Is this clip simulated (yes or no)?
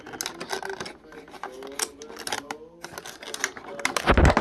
no